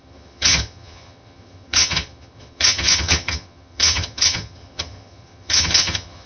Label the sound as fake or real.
fake